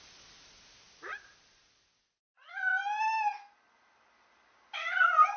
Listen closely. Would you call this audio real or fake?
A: real